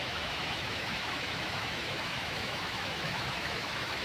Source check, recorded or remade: remade